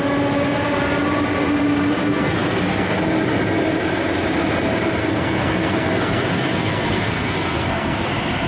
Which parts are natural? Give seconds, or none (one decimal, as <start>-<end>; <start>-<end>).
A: 0.0-2.0; 3.0-5.0; 8.1-8.5